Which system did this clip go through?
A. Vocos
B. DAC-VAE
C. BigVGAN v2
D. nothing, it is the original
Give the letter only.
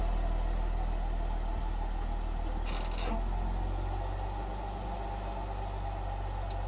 D